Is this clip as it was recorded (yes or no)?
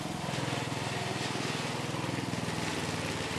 yes